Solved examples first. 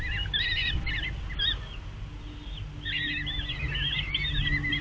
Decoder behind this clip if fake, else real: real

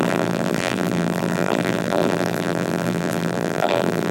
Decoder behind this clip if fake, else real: fake, vocoder, BigVGAN v2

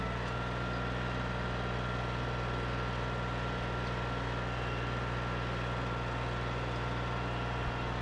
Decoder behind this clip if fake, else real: real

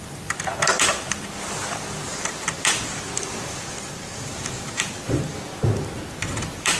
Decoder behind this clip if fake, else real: fake, vocoder, BigVGAN v2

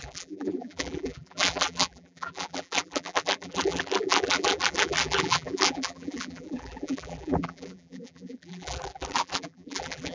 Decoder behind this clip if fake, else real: fake, vocoder, BigVGAN v2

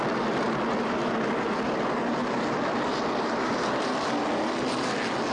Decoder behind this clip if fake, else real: real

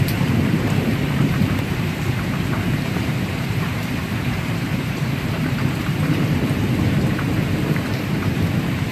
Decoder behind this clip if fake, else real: fake, vocoder, BigVGAN v2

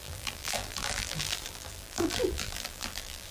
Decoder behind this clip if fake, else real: fake, vocoder, BigVGAN v2